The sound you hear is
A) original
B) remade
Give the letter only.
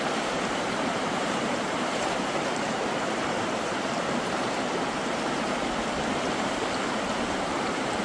B